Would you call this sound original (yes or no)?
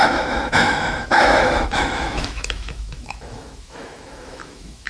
no